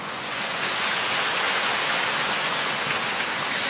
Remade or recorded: remade